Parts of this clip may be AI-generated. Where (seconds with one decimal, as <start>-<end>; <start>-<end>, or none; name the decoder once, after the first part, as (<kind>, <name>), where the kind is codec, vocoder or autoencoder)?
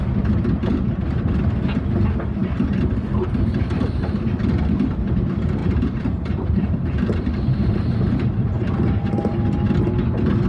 5.6-9.1 (vocoder, BigVGAN v2)